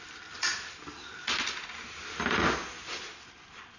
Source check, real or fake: real